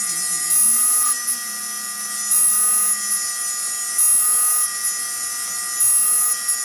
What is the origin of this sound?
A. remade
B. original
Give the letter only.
B